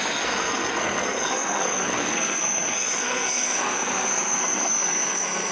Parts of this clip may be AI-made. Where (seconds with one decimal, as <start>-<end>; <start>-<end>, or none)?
0.0-5.5